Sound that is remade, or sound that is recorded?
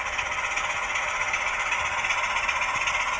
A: recorded